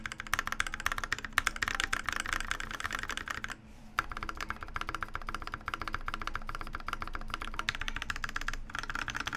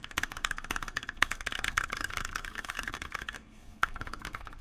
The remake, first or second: second